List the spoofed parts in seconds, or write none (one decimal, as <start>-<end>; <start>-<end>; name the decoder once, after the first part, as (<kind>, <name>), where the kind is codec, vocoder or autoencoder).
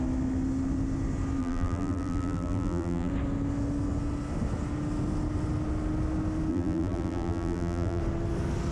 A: 1.4-3.1 (vocoder, BigVGAN v2); 6.5-8.0